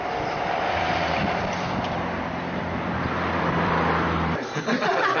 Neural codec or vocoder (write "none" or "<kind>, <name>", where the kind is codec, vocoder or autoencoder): vocoder, BigVGAN v2